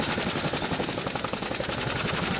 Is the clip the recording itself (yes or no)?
yes